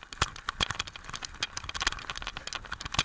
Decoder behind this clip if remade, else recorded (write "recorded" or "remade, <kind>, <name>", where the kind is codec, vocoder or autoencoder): recorded